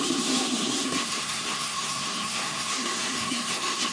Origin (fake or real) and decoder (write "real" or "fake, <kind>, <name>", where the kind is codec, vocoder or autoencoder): fake, codec, SNAC